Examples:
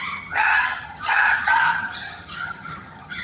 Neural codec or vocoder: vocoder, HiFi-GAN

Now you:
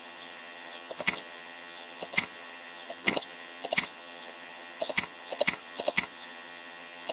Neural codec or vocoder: vocoder, HiFi-GAN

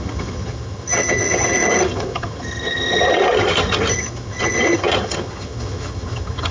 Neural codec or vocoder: vocoder, HiFi-GAN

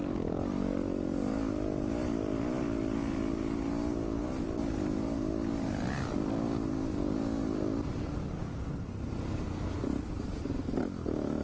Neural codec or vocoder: none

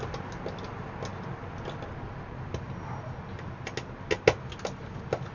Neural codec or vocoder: none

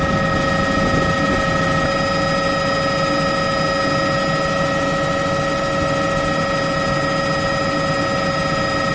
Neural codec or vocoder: none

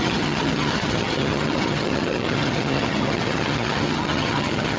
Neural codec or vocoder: vocoder, HiFi-GAN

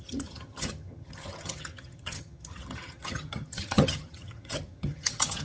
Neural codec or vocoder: vocoder, HiFi-GAN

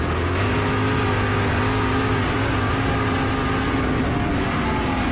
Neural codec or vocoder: none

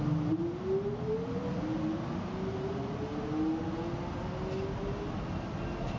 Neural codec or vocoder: none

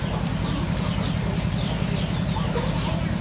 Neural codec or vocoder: none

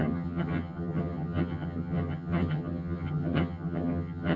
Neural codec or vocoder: vocoder, HiFi-GAN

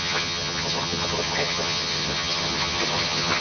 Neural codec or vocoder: vocoder, HiFi-GAN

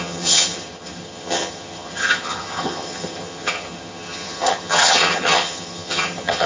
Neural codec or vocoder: vocoder, HiFi-GAN